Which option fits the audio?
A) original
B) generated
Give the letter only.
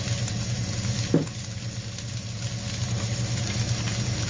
A